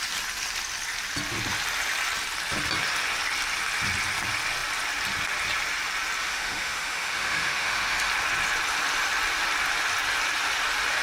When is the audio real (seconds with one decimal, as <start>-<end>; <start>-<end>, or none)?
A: 0.0-6.2; 8.1-11.0